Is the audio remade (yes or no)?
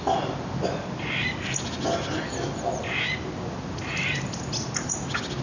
no